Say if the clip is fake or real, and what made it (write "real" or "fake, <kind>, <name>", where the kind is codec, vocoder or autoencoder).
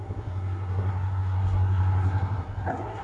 fake, codec, SNAC